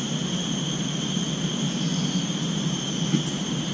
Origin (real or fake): real